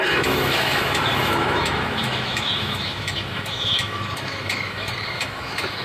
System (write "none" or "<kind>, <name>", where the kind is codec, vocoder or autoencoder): autoencoder, DAC-VAE